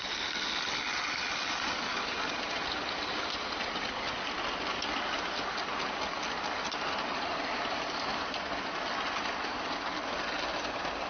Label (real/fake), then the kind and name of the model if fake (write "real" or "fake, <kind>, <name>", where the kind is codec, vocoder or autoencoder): real